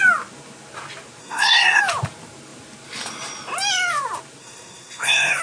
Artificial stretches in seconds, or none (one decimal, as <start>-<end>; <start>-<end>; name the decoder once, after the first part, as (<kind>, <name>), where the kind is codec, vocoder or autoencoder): 1.2-1.8 (codec, SNAC); 4.4-5.4